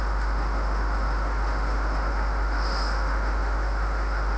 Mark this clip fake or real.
fake